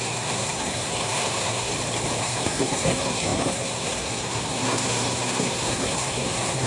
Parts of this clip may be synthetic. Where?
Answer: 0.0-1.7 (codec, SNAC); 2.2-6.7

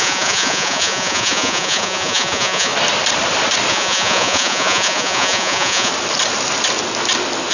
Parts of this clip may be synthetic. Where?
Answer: 0.0-2.7 (vocoder, Vocos); 3.7-5.9

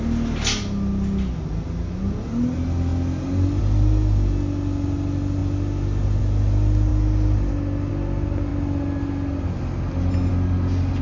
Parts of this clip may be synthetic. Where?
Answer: none

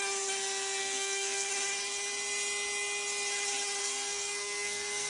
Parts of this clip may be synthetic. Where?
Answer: 0.8-1.5 (codec, SNAC); 3.8-5.1

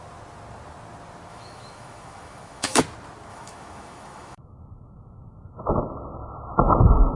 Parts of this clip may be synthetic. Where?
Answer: 1.3-2.8 (autoencoder, DAC-VAE); 3.3-5.8

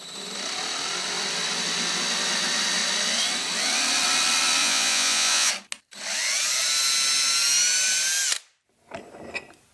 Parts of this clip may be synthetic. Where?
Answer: 4.6-5.5 (vocoder, Vocos)